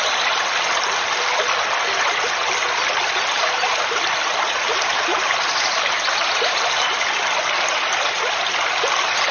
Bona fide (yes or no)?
yes